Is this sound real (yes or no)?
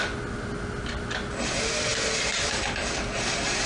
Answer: yes